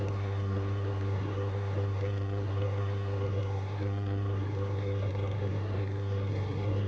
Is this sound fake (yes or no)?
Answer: yes